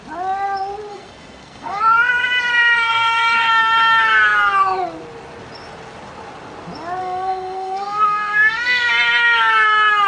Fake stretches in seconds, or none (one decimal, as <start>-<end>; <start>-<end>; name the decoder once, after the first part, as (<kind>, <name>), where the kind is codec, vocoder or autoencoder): 0.9-1.8 (codec, SNAC); 2.5-3.5; 7.0-8.9